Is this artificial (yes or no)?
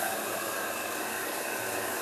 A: yes